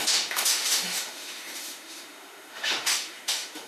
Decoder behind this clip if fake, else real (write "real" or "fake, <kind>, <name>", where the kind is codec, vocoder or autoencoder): fake, autoencoder, DAC-VAE